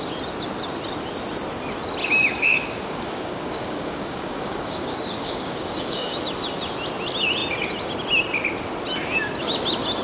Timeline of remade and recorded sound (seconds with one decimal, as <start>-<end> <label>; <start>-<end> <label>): 0.0-2.0 recorded; 2.0-6.2 remade; 6.2-10.0 recorded